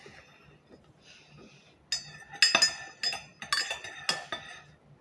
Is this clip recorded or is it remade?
recorded